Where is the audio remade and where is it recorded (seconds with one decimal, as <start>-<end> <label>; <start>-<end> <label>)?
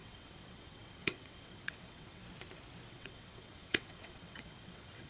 0.0-2.2 remade; 2.2-2.9 recorded; 2.9-5.1 remade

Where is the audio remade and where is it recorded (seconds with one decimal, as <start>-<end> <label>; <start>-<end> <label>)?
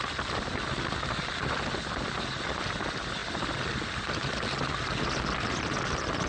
0.0-6.3 recorded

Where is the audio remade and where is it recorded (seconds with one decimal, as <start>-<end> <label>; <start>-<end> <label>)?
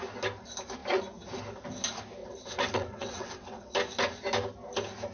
0.0-2.2 recorded; 2.2-3.6 remade; 3.6-5.1 recorded